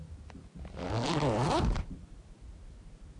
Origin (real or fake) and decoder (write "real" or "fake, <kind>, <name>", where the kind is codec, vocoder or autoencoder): real